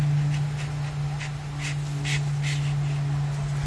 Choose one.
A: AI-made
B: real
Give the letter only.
B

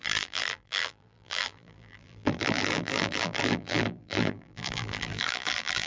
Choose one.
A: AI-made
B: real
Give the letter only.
A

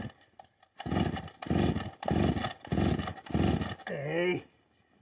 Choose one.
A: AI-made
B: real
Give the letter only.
B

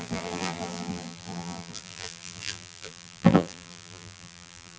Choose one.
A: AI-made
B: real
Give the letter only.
A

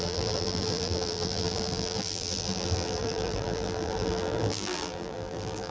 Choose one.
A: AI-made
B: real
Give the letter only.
A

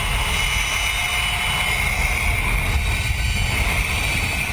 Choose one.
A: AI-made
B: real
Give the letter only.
B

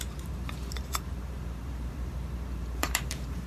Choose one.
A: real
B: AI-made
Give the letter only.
B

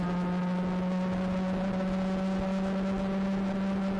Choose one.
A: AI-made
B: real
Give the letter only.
B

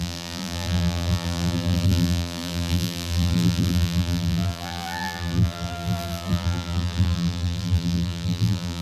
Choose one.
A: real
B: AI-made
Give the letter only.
B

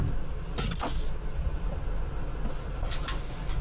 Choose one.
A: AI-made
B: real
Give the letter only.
B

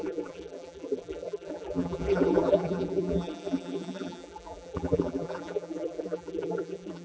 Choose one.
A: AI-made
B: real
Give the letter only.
A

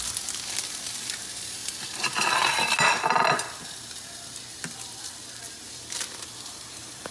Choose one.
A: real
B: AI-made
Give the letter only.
A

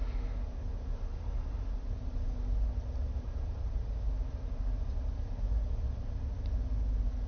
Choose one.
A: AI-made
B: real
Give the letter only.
B